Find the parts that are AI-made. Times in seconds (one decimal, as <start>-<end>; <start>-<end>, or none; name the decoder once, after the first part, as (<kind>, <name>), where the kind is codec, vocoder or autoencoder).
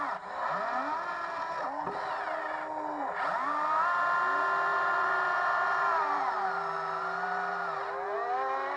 4.7-6.3 (vocoder, BigVGAN v2)